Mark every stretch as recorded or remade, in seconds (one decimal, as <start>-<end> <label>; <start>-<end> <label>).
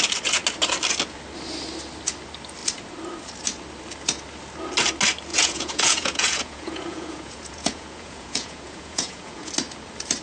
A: 0.0-5.3 recorded; 5.3-9.5 remade; 9.5-10.2 recorded